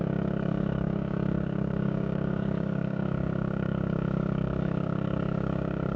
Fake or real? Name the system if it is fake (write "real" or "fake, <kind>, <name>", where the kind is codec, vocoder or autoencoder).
fake, codec, DAC